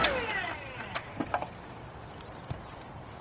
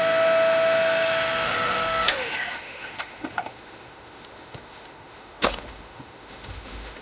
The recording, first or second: first